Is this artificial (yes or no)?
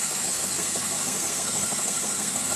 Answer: yes